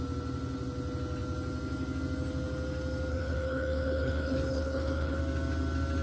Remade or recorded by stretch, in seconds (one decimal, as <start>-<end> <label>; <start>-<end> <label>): 0.0-3.1 recorded; 3.1-5.2 remade; 5.2-6.0 recorded